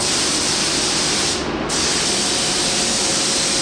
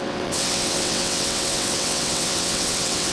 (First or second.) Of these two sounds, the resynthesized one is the second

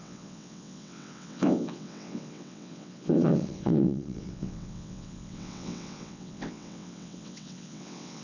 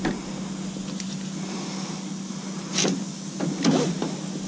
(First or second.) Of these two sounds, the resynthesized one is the first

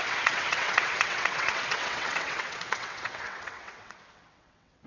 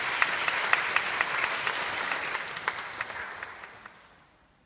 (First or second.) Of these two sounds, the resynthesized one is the first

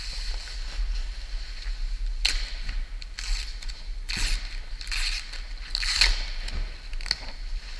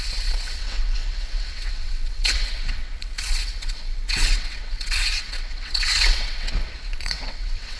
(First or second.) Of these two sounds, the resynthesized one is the second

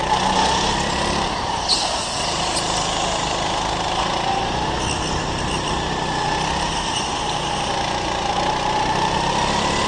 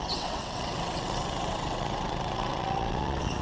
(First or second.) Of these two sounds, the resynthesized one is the second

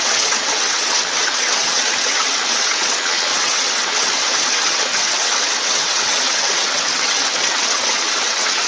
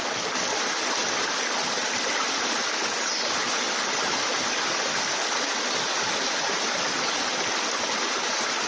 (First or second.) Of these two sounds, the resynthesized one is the first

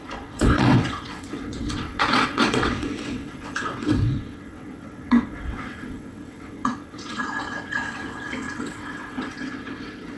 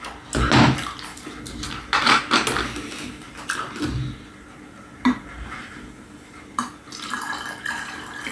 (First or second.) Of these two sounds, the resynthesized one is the first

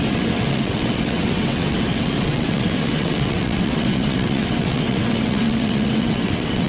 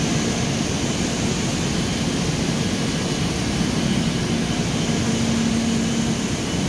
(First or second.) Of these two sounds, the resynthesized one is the first